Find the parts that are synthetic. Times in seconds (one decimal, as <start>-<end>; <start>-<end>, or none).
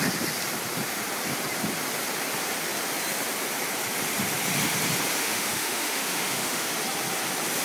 5.2-6.7